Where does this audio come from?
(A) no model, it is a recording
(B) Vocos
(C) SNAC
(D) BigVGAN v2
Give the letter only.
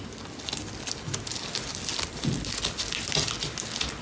A